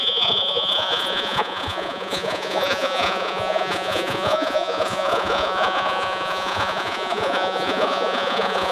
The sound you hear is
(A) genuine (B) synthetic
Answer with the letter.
B